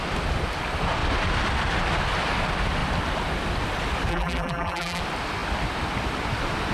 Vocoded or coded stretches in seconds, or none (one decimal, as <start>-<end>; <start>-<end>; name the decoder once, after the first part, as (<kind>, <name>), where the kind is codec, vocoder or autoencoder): 4.1-5.0 (vocoder, BigVGAN v2)